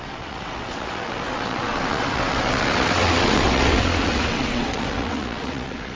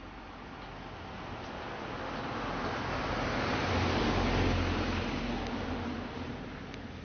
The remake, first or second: first